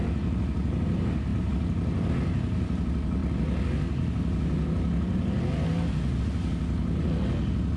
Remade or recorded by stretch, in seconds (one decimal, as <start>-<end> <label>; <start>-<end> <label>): 0.0-7.8 recorded

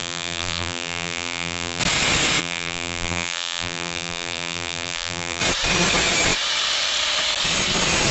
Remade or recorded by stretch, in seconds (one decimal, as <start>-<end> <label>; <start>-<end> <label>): 0.0-1.8 remade; 1.8-2.4 recorded; 2.4-5.4 remade; 5.4-8.1 recorded

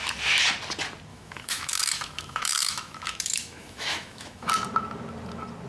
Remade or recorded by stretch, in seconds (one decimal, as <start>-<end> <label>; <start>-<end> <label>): 0.0-1.1 recorded; 1.1-4.5 remade; 4.5-5.7 recorded

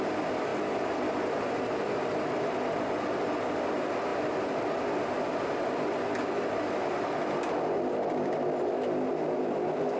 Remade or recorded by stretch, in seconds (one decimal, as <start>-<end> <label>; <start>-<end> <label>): 0.0-10.0 recorded

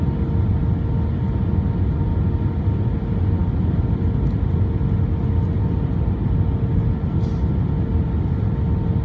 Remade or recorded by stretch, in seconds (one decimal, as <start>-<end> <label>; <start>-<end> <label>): 0.0-9.0 recorded

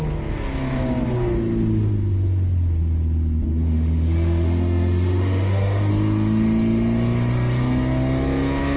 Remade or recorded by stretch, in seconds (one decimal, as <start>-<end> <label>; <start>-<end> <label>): 0.0-3.5 recorded; 3.5-5.9 remade; 5.9-8.8 recorded